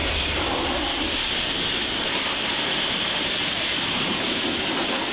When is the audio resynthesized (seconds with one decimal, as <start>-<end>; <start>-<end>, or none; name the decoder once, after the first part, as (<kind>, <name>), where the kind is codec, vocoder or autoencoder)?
none